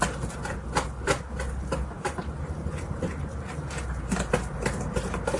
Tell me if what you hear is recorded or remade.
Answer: recorded